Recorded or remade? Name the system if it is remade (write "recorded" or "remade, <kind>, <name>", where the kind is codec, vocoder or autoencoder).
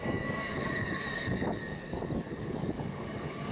remade, codec, DAC